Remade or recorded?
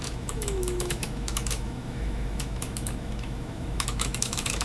remade